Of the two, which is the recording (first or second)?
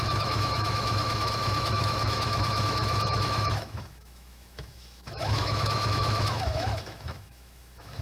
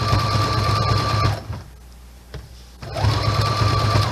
second